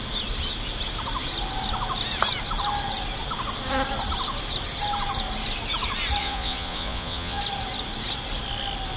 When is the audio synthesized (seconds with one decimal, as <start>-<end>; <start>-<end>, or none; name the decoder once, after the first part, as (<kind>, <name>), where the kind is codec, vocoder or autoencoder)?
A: 6.2-7.4 (vocoder, Vocos)